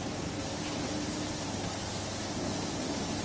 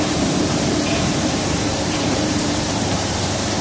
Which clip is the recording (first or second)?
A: first